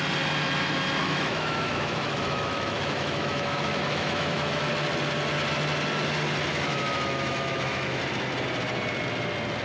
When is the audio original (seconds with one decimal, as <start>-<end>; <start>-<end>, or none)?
0.0-1.0; 4.7-6.5; 8.0-9.6